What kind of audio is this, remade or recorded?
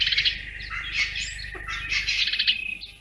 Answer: recorded